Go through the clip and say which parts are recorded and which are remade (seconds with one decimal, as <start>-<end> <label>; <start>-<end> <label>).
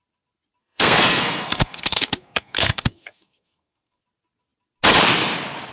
0.0-0.6 recorded; 0.6-4.0 remade; 4.0-5.7 recorded